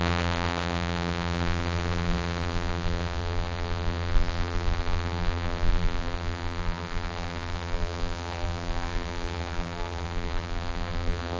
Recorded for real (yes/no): no